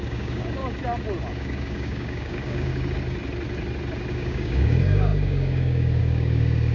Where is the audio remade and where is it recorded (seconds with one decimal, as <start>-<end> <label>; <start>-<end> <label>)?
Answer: 0.0-0.6 remade; 0.6-1.3 recorded; 1.3-2.7 remade; 2.7-4.1 recorded; 4.1-6.7 remade